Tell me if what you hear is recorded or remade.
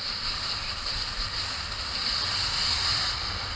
recorded